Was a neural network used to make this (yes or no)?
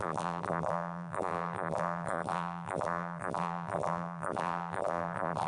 yes